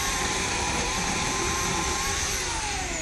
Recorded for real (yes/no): no